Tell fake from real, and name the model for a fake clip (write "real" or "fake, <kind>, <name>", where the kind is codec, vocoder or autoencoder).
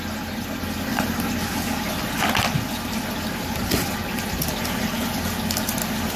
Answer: real